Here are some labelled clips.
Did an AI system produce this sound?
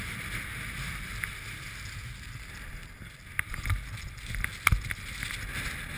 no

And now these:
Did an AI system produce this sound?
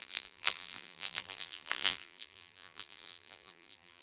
yes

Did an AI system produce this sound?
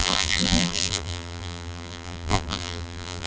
yes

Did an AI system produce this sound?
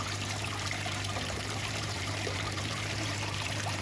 yes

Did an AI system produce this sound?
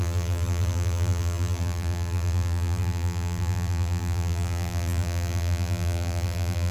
yes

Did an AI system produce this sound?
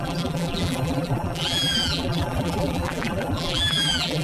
yes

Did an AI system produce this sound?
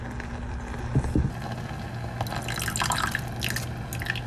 no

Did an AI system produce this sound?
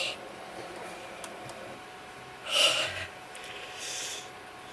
no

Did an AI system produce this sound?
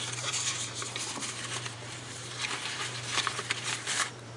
yes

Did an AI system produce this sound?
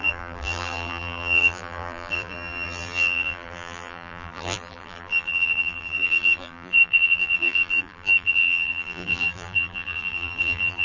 yes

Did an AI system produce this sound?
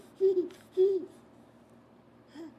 yes